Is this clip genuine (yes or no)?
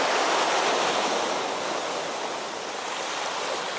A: yes